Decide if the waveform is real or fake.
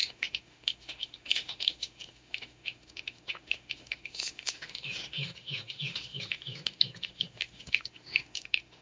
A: fake